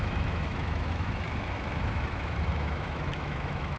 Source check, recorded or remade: remade